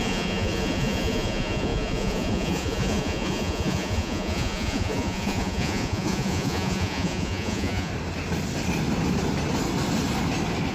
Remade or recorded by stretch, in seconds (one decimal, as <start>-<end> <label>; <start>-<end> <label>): 0.0-7.9 remade; 7.9-10.7 recorded